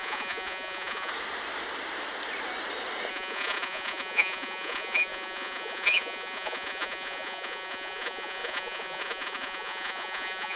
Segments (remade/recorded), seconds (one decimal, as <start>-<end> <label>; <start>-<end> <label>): 0.0-1.1 remade; 1.1-3.1 recorded; 3.1-10.6 remade